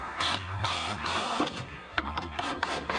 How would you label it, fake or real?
fake